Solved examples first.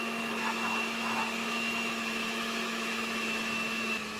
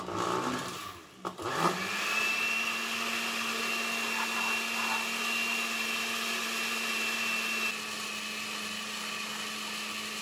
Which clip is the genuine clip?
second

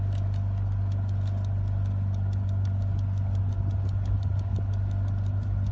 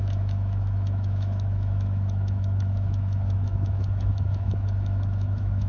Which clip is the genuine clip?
first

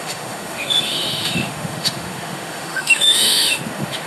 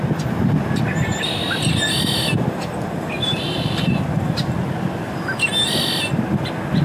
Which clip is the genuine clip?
second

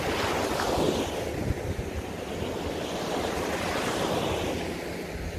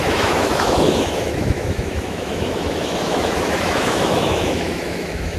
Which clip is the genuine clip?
first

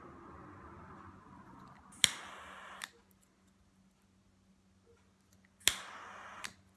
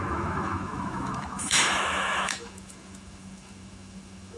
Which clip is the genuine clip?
first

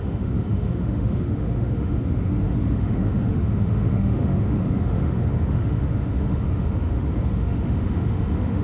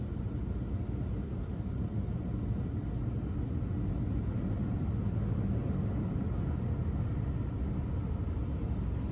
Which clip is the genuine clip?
second